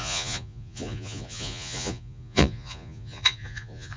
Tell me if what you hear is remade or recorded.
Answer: remade